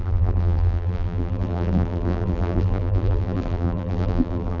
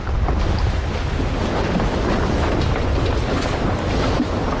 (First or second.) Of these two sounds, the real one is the second